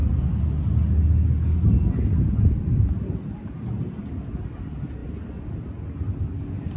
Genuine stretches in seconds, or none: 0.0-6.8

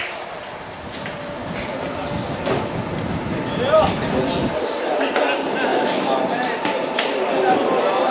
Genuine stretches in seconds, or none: 0.0-5.7; 6.2-8.1

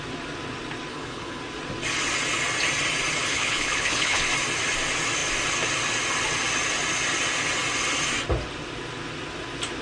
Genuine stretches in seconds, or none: 0.0-0.9; 1.4-3.3; 4.2-9.8

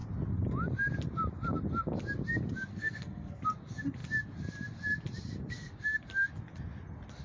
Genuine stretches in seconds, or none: 0.0-2.7; 3.4-7.2

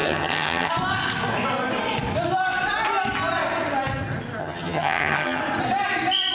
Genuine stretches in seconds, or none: 0.7-4.4; 5.4-6.3

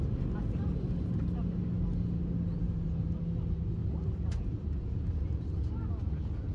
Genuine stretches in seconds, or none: 0.0-2.6; 3.2-3.8; 5.5-6.5

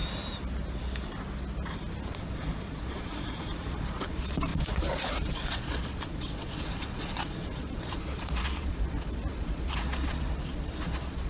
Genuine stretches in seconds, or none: 0.0-2.1

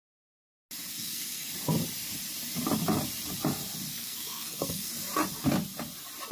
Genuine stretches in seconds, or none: 0.0-0.9; 1.5-3.9; 4.9-6.3